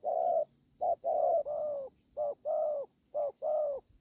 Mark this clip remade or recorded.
recorded